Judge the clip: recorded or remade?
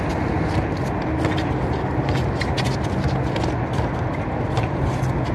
recorded